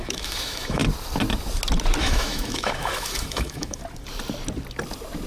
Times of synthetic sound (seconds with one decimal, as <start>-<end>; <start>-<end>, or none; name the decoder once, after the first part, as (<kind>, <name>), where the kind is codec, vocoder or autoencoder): 0.0-0.8 (autoencoder, DAC-VAE); 2.0-3.8